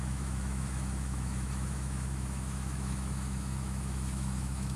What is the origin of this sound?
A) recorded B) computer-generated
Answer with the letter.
B